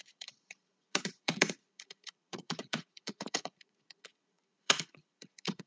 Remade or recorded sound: remade